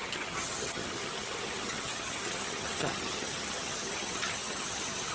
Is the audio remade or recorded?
remade